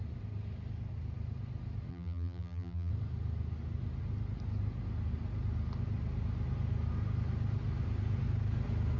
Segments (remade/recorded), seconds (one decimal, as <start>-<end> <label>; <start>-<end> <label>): 0.0-1.9 recorded; 1.9-2.9 remade; 2.9-9.0 recorded